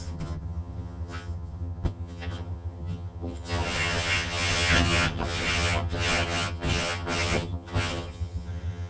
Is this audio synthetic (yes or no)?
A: yes